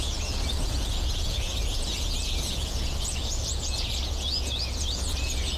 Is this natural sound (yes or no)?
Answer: no